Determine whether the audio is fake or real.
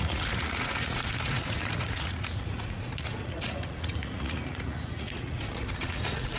fake